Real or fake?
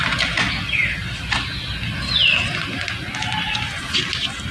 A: real